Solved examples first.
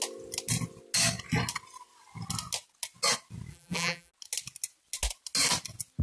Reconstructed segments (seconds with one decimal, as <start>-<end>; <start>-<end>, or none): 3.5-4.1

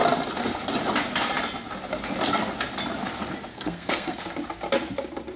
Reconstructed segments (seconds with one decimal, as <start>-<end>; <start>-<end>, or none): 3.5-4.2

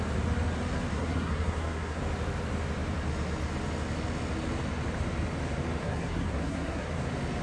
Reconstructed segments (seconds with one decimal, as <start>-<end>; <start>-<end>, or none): 0.9-2.0; 5.8-6.9

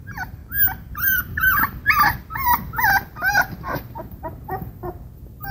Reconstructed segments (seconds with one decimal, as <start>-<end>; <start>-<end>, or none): 0.0-0.4; 1.2-1.8; 3.7-5.5

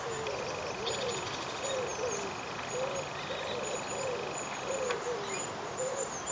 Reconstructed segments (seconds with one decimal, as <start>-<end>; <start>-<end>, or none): none